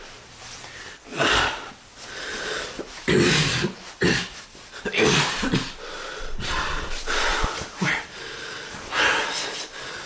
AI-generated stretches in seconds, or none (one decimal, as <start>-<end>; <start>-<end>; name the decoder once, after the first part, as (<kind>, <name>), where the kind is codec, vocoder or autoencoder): 7.3-8.7 (vocoder, BigVGAN v2)